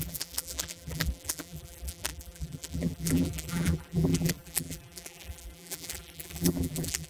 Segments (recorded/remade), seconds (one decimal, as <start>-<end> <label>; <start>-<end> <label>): 0.0-7.1 remade